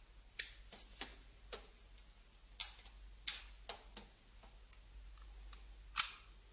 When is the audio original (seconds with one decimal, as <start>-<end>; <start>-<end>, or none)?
0.0-6.5